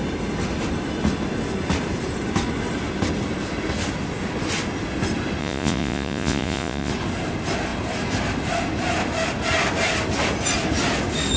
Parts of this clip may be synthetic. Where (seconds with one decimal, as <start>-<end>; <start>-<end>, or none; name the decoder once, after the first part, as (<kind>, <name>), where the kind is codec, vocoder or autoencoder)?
5.4-6.9 (vocoder, Vocos)